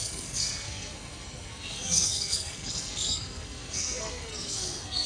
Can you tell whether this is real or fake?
fake